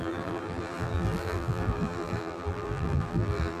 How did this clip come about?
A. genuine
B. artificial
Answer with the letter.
B